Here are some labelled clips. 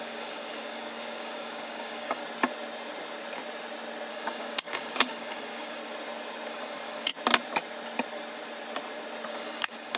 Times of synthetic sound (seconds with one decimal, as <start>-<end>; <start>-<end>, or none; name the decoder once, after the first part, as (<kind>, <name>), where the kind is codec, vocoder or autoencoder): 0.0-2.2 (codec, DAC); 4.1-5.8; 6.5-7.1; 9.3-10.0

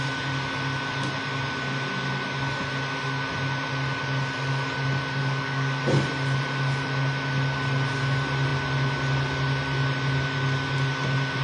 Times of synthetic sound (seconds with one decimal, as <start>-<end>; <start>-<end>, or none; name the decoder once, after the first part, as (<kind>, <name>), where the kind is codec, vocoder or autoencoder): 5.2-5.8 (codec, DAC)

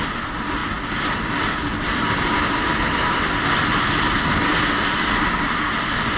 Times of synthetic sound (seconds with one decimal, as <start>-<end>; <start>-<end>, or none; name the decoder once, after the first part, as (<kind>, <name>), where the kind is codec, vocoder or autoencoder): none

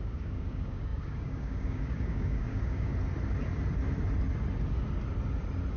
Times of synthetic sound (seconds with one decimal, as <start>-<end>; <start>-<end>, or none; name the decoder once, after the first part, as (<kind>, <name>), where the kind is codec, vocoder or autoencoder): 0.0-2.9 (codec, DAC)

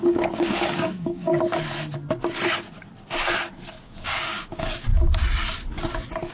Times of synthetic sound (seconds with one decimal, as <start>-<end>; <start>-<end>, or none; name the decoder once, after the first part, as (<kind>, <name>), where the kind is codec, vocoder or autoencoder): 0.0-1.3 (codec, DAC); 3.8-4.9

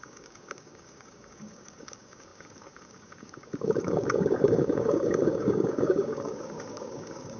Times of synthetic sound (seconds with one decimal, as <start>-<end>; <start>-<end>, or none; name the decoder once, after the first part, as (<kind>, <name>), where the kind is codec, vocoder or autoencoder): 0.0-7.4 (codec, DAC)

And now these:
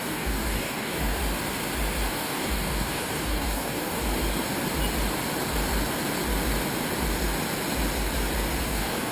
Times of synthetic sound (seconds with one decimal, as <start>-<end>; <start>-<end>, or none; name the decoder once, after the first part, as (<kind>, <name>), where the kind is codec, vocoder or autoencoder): 0.0-1.2 (codec, DAC); 2.1-4.0; 8.6-9.1